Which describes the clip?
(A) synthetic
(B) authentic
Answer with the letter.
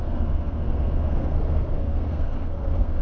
A